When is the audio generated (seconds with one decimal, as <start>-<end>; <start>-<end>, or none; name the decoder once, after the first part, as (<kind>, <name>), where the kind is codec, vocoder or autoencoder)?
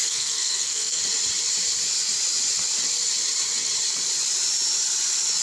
0.0-1.0 (codec, SNAC)